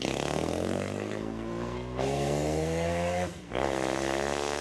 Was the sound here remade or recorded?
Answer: remade